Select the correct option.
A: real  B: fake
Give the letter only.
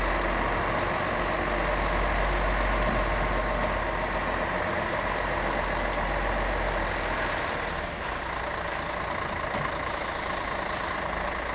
A